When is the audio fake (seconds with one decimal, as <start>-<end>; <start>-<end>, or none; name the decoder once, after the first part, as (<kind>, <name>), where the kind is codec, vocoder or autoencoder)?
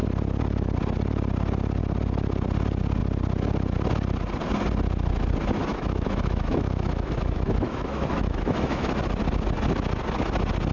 5.7-8.9 (autoencoder, DAC-VAE)